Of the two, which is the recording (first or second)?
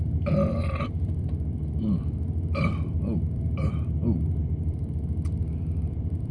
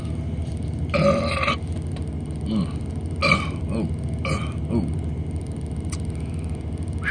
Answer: second